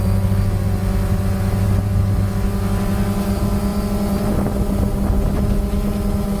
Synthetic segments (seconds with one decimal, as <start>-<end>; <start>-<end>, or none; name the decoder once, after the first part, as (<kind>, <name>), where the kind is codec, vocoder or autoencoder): none

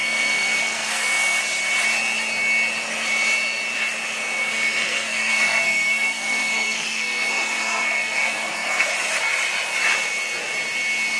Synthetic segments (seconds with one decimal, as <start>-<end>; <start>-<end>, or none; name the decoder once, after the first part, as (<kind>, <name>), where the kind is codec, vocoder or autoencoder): 0.0-1.4 (codec, SNAC); 4.4-8.9

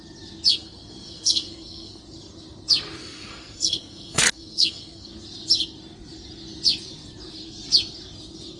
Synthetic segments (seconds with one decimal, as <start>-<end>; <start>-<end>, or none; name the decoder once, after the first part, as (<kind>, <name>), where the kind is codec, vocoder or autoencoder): 0.5-2.0 (codec, SNAC); 3.0-5.1

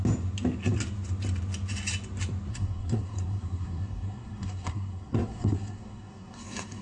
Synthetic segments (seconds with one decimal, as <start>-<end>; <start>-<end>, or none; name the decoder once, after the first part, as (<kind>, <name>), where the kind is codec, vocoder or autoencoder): 2.5-6.8 (codec, SNAC)

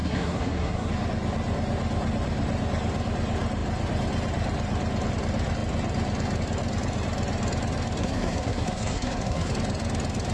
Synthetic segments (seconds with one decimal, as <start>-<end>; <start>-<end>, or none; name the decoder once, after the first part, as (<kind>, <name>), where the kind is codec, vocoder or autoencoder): 0.0-0.9 (codec, SNAC); 8.0-9.5

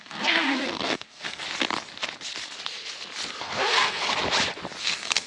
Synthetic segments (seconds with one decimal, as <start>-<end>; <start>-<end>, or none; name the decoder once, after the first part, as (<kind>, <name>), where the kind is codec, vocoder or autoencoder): 0.0-1.4 (codec, SNAC); 3.4-4.0; 4.8-5.3

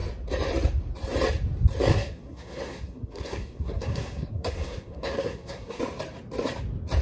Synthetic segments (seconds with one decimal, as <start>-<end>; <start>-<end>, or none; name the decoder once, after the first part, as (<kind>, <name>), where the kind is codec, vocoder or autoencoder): 1.9-5.8 (codec, SNAC)

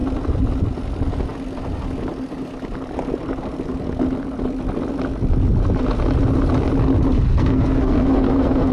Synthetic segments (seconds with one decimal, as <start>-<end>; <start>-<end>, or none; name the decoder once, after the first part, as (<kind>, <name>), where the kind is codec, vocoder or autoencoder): 7.3-8.7 (codec, SNAC)